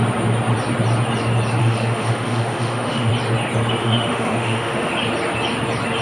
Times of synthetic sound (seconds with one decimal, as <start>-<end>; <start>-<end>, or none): 1.6-3.1; 3.8-4.9